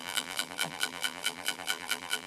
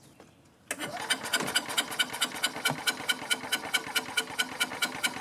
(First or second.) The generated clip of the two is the first